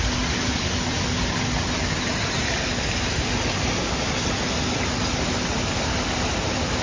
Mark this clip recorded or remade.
recorded